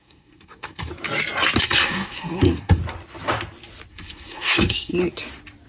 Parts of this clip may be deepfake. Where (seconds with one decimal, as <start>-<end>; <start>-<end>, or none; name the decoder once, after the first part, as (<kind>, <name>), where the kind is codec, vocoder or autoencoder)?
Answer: 0.0-0.9 (codec, SNAC); 1.6-2.8; 3.9-4.9